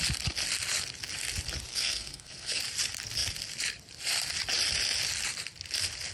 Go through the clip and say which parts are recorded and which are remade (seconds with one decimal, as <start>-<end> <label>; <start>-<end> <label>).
0.0-1.7 recorded; 1.7-2.6 remade; 2.6-6.1 recorded